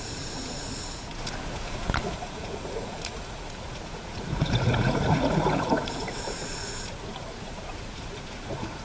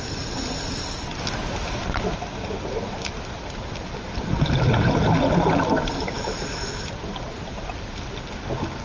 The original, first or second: second